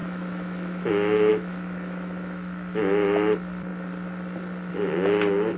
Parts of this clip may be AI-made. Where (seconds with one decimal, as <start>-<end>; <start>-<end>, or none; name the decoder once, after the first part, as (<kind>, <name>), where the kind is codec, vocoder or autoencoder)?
0.0-0.9 (autoencoder, DAC-VAE); 1.3-2.8